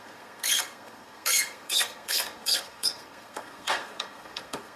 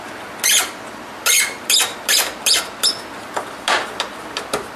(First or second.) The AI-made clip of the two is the first